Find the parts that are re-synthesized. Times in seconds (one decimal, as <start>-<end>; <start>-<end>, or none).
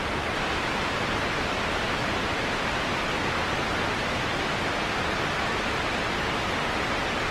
3.2-5.4